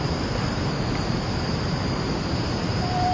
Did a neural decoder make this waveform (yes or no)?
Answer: yes